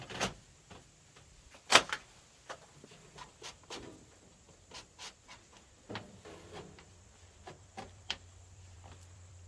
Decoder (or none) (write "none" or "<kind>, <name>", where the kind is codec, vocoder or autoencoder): vocoder, BigVGAN v2